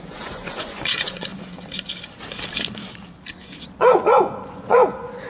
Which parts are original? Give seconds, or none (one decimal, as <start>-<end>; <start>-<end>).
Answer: 1.3-3.8